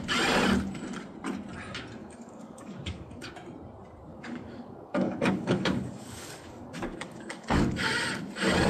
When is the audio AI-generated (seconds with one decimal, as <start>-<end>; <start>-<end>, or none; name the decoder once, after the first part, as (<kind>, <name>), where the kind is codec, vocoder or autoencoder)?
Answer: 2.0-3.3 (codec, DAC); 4.1-7.9